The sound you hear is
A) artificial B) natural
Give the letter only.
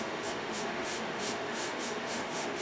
A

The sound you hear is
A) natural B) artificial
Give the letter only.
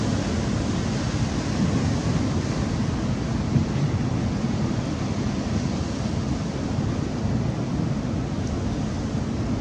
A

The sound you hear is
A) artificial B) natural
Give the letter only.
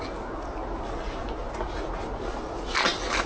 B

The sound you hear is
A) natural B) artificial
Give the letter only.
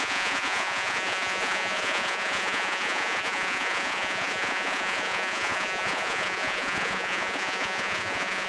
B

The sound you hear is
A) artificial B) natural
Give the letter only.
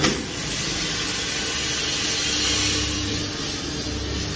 B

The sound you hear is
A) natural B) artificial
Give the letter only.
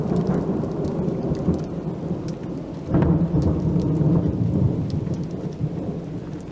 A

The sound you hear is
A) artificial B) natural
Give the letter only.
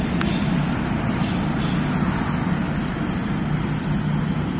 B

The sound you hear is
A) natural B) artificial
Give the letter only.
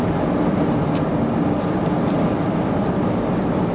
A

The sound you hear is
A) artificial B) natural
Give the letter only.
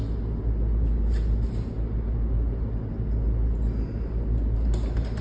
B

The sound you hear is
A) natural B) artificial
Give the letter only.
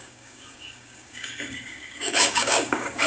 B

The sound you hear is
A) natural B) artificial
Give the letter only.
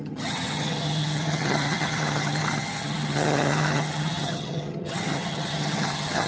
B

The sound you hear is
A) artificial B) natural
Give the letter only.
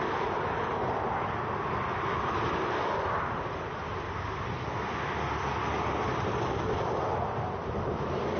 B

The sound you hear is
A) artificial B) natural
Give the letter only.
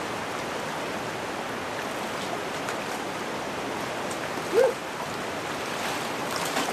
A